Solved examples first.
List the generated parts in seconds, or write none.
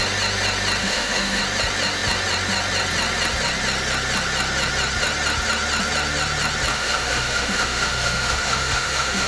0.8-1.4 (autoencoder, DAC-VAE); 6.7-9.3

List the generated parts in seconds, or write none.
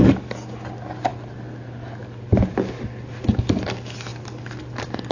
none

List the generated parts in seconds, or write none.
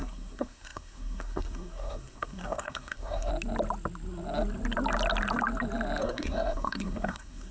0.0-3.3 (codec, SNAC); 6.0-7.5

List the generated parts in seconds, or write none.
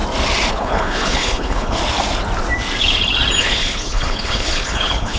0.5-1.8 (codec, HILCodec); 3.4-5.2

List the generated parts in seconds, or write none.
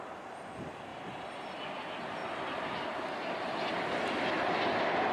0.0-5.1 (vocoder, BigVGAN v2)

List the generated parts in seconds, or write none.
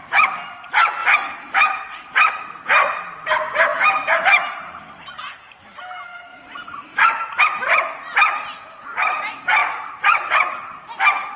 1.0-2.3 (vocoder, BigVGAN v2); 3.7-5.4; 6.3-7.4